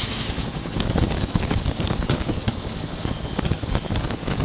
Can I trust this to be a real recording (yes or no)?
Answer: no